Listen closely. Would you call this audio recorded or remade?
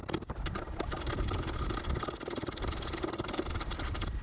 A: remade